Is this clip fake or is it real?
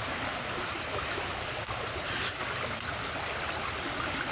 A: real